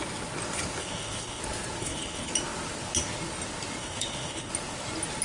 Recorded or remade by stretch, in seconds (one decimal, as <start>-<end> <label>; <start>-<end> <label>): 0.0-0.8 recorded; 0.8-1.4 remade; 1.4-1.8 recorded; 1.8-2.3 remade; 2.3-3.8 recorded; 3.8-4.5 remade; 4.5-5.2 recorded